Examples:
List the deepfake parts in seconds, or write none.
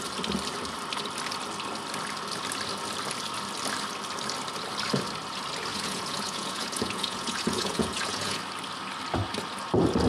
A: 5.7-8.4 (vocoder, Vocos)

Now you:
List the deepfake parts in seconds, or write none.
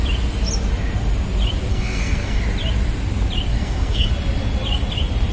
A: 1.7-2.4 (codec, SNAC); 3.5-4.1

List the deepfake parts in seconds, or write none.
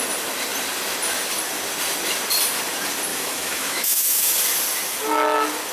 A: 3.1-4.3 (autoencoder, DAC-VAE)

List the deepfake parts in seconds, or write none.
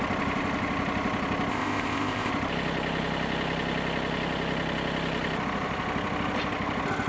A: 1.5-2.3 (codec, ZipCodec)